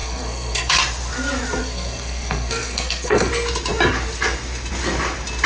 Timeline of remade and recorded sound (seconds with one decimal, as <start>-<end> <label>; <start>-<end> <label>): 0.0-0.8 remade; 0.8-1.6 recorded; 1.6-3.3 remade; 3.3-5.5 recorded